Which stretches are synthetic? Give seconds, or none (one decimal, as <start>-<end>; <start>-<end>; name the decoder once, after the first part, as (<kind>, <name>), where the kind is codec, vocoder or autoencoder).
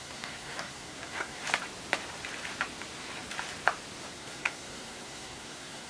0.0-1.4 (codec, SNAC); 4.1-5.9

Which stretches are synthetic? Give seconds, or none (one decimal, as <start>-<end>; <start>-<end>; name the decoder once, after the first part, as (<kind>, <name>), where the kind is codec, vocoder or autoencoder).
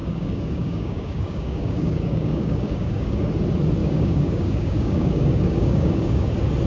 0.0-3.3 (codec, DAC); 3.8-6.3